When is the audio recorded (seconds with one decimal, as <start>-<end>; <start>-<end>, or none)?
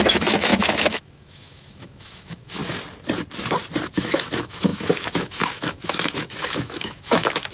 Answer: 2.6-3.9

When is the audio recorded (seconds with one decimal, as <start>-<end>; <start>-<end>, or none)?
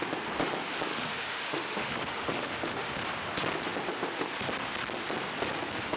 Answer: 0.0-0.9; 3.0-6.0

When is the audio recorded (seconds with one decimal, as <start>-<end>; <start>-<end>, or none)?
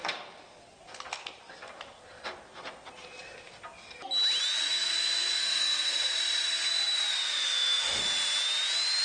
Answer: 0.0-5.4; 6.0-7.1; 8.0-9.0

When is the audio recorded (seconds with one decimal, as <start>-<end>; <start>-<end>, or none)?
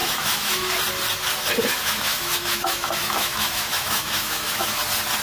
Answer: 0.7-1.7; 4.8-5.2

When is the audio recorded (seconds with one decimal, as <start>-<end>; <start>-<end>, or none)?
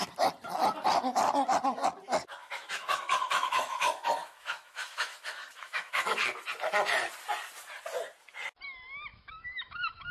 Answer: 0.0-2.4; 6.3-9.1